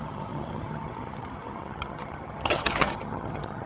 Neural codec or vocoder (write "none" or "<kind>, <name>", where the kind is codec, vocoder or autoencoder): vocoder, HiFi-GAN